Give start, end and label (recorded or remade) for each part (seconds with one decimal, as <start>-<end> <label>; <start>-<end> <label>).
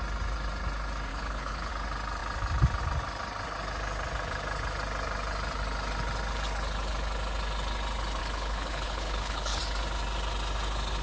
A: 0.0-1.1 recorded; 1.1-1.7 remade; 1.7-8.2 recorded; 8.2-9.6 remade; 9.6-11.0 recorded